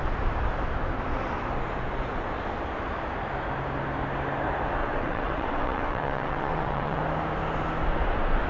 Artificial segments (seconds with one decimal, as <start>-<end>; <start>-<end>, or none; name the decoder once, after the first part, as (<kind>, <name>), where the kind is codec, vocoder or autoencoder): 4.8-7.0 (vocoder, WaveNeXt)

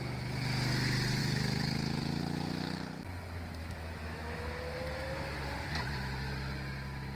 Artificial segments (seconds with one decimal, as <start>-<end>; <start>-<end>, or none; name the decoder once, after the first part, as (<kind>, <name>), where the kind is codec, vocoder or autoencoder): 1.2-2.0 (autoencoder, DAC-VAE); 3.6-4.6

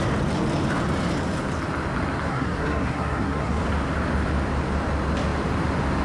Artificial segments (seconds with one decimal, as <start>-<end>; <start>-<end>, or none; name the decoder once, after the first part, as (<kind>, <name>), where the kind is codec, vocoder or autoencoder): 2.3-3.6 (codec, SNAC)

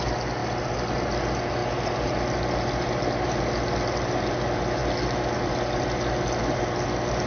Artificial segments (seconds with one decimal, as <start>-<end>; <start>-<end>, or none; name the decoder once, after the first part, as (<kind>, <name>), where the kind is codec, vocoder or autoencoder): none

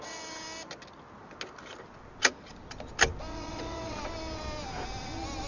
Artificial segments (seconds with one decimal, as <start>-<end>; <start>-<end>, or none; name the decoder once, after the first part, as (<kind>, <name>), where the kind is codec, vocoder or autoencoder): 3.3-4.0 (vocoder, WaveNeXt)

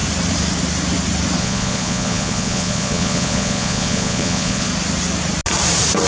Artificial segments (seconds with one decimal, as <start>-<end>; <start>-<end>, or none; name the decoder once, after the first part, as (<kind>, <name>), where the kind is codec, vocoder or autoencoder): 1.4-4.7 (vocoder, Vocos)

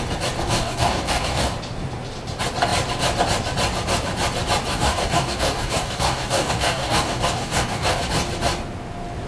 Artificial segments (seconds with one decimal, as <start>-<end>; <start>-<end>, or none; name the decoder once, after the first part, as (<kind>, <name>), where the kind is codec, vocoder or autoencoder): 0.4-1.5 (codec, DAC); 4.7-8.0

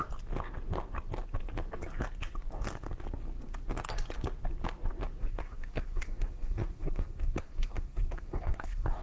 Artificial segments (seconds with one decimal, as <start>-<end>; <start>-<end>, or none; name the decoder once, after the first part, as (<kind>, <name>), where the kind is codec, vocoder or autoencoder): 5.2-9.0 (codec, SNAC)